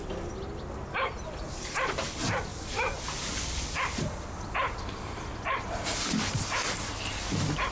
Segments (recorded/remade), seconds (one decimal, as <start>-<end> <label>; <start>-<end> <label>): 0.0-2.5 recorded; 2.5-7.0 remade; 7.0-7.7 recorded